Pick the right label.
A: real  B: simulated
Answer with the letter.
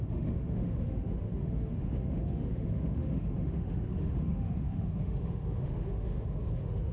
B